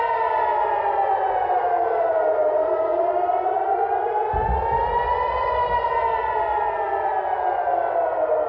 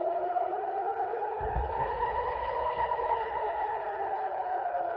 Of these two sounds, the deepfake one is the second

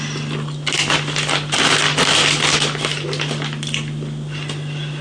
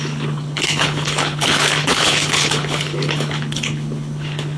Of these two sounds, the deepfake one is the second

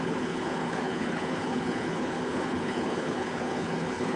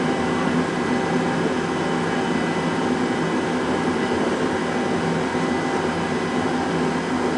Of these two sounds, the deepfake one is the first